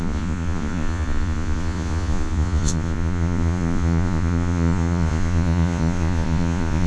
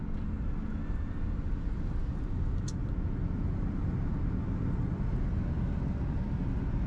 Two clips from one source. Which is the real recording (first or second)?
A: second